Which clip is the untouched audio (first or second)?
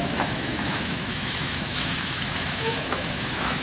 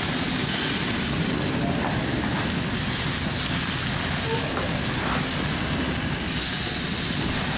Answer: second